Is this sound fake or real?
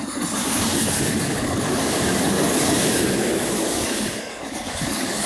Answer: fake